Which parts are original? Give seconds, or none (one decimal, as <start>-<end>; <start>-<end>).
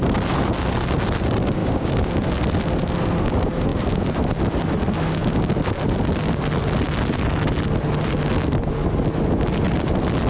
0.0-1.6; 2.1-10.3